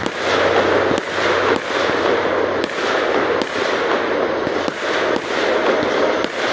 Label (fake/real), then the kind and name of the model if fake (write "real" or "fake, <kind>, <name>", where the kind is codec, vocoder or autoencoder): real